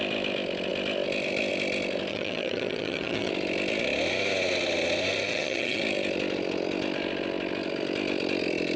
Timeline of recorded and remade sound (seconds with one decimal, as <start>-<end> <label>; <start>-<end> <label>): 0.0-2.1 recorded; 2.1-3.3 remade; 3.3-5.3 recorded; 5.3-5.8 remade; 5.8-8.8 recorded